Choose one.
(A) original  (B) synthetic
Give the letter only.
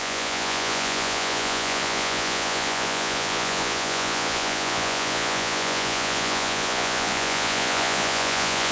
B